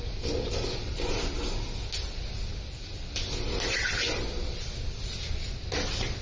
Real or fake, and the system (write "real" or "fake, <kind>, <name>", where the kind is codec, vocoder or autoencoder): real